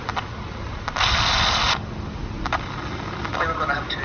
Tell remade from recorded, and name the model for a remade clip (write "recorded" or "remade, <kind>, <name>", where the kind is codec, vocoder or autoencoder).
recorded